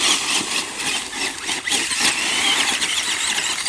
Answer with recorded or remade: remade